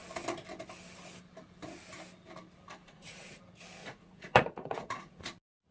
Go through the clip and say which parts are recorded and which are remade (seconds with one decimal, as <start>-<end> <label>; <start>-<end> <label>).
0.0-2.8 recorded; 2.8-3.4 remade; 3.4-3.8 recorded; 3.8-5.2 remade; 5.2-5.7 recorded